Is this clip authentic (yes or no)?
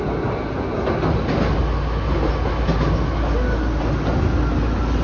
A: yes